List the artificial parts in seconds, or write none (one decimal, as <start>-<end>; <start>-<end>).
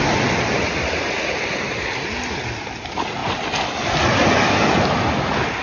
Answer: none